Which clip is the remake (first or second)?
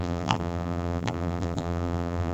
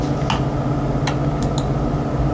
first